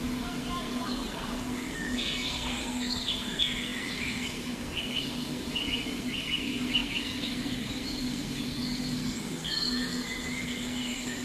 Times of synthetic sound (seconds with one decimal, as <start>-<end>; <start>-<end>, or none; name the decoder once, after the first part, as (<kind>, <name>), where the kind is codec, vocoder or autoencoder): 0.0-11.2 (codec, SNAC)